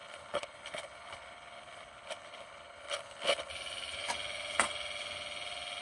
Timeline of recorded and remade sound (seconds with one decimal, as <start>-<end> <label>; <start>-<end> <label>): 0.0-3.5 remade; 3.5-5.8 recorded